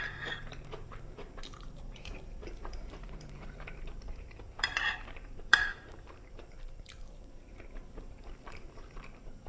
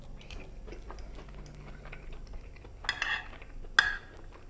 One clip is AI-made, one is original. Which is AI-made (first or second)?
first